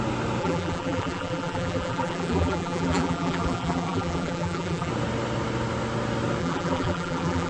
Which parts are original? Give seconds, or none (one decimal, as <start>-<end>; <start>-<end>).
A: 0.0-0.4; 4.9-6.4